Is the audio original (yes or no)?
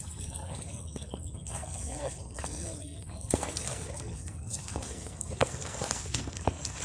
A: no